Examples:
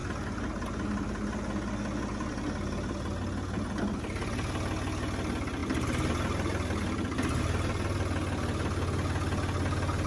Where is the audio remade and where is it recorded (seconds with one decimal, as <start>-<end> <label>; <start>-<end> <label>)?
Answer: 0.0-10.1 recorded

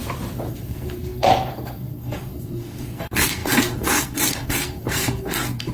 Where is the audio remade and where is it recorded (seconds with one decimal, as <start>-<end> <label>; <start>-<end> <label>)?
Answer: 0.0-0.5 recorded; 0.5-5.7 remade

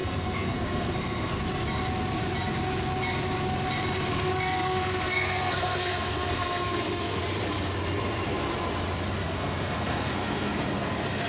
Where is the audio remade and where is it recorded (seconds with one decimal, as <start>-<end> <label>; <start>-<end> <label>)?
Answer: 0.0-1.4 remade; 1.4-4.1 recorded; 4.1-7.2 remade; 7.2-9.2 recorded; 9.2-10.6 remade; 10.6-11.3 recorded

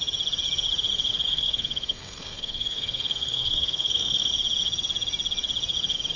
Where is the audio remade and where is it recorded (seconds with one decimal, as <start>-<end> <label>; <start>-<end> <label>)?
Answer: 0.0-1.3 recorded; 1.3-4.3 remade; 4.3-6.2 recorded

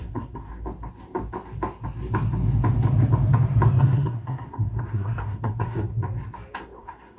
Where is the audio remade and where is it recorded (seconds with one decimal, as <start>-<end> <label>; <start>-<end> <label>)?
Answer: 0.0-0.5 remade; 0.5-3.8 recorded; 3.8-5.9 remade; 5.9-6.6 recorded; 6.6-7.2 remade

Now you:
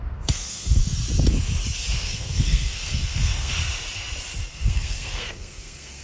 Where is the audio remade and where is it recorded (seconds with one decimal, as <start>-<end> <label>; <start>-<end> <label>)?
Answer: 0.0-0.8 remade; 0.8-1.9 recorded; 1.9-3.6 remade; 3.6-4.5 recorded; 4.5-6.0 remade